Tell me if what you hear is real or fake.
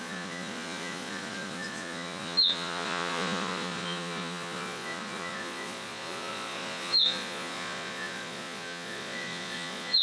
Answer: fake